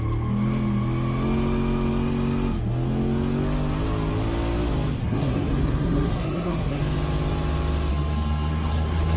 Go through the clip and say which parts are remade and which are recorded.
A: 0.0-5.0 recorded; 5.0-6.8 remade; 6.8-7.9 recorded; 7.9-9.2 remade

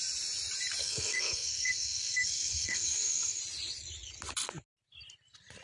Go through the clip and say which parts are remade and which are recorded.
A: 0.0-0.8 recorded; 0.8-3.4 remade; 3.4-5.6 recorded